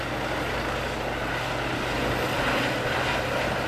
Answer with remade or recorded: recorded